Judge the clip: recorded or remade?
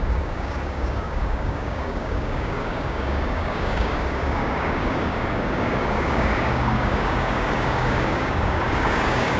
remade